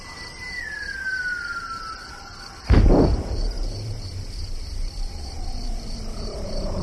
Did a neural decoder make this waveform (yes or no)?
yes